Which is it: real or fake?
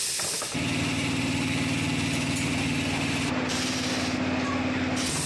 real